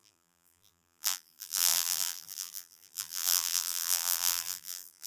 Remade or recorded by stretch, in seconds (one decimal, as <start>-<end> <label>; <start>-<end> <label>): 0.0-5.1 remade